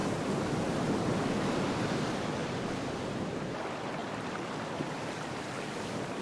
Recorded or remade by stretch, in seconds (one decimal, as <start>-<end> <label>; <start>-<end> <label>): 0.0-1.0 recorded; 1.0-6.2 remade